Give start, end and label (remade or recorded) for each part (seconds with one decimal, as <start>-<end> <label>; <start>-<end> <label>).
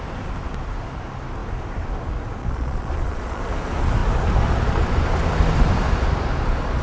0.0-2.4 recorded; 2.4-3.4 remade; 3.4-6.8 recorded